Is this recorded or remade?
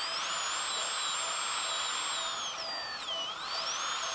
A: recorded